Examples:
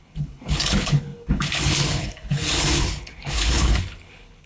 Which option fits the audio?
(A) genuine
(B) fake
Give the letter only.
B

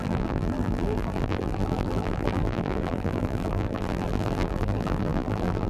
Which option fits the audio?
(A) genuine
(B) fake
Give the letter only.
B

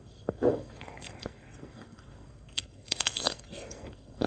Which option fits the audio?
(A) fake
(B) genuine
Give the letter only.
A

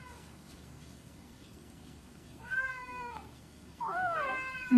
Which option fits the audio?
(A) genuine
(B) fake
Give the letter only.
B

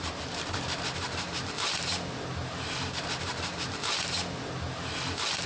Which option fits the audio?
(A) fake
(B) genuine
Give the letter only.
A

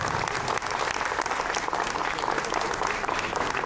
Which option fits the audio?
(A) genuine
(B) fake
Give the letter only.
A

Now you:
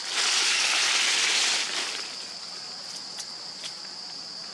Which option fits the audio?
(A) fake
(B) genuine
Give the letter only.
B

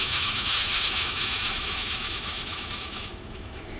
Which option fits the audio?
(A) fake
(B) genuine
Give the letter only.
A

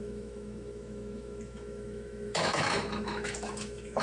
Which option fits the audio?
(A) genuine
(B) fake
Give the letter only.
B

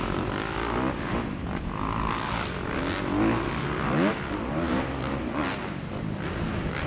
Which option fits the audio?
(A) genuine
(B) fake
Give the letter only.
A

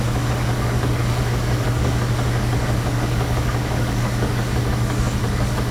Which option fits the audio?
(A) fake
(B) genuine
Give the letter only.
A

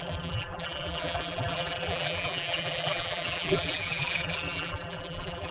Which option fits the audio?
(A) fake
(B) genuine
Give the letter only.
A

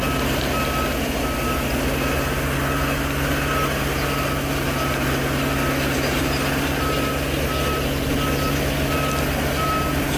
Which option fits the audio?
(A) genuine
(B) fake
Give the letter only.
A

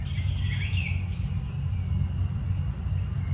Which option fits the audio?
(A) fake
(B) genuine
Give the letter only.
B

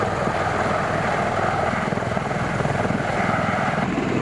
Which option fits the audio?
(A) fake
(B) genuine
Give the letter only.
B